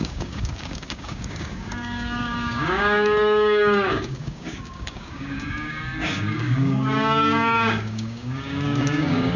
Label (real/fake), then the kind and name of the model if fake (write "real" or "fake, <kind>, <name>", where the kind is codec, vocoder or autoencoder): fake, codec, DAC